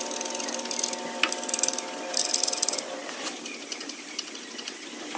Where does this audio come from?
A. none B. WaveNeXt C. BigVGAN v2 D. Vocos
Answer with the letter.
A